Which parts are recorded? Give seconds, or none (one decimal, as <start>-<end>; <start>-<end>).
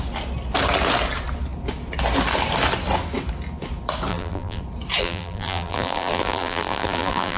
0.0-4.1; 4.6-5.0